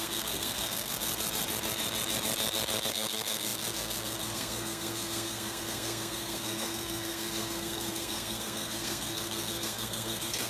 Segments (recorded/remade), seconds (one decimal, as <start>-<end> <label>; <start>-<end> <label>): 0.0-1.1 remade; 1.1-2.9 recorded; 2.9-10.5 remade